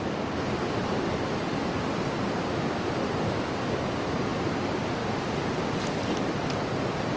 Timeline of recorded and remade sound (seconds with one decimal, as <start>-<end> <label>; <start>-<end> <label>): 0.0-5.0 recorded; 5.0-5.7 remade; 5.7-7.2 recorded